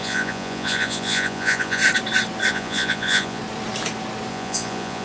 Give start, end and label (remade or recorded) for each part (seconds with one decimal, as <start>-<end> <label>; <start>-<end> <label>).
0.0-1.8 remade; 1.8-2.5 recorded; 2.5-3.4 remade; 3.4-4.3 recorded; 4.3-5.0 remade